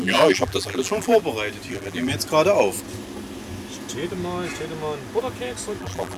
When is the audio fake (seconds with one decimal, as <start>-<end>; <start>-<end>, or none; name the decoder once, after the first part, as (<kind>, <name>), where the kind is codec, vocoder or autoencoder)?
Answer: 0.0-1.2 (vocoder, BigVGAN v2); 1.7-2.1; 5.8-6.2